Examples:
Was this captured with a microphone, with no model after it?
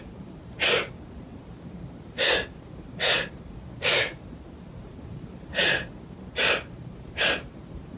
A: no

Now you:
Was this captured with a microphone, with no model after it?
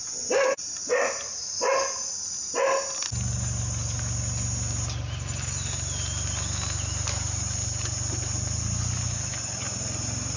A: yes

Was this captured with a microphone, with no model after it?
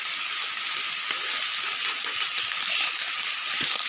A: yes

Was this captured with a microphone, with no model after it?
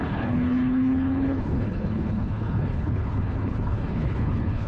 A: no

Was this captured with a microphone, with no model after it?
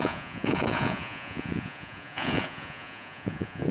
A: no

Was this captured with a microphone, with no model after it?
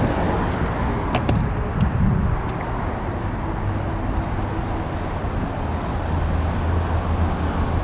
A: yes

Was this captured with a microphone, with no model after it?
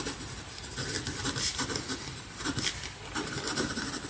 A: yes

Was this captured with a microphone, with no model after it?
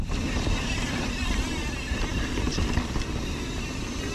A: yes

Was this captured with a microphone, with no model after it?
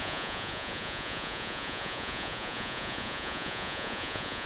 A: no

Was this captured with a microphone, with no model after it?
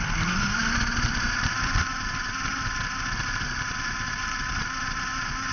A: yes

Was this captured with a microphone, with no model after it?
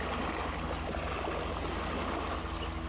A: yes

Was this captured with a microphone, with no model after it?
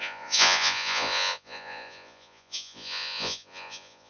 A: no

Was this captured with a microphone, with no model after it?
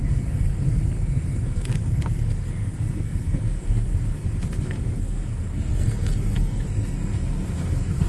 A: no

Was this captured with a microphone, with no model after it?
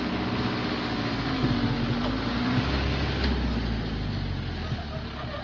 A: yes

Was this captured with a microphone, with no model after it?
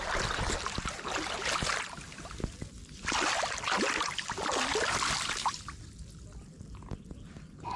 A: yes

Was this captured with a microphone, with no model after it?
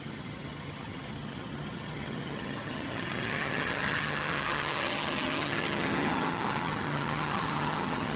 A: no